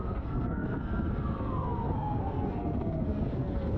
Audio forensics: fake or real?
fake